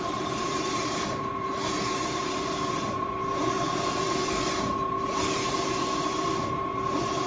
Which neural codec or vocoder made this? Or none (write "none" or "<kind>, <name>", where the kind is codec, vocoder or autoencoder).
vocoder, BigVGAN v2